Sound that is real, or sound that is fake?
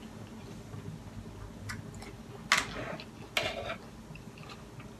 real